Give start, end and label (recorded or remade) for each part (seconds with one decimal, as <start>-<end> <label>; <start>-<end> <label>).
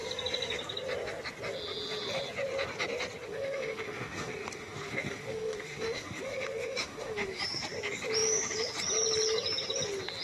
0.0-3.3 recorded; 3.3-7.4 remade; 7.4-10.2 recorded